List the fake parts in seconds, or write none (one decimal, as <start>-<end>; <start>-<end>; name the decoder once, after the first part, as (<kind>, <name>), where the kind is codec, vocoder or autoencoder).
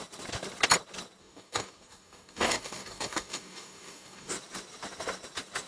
1.2-4.3 (codec, DAC)